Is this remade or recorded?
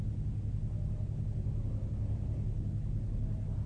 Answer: recorded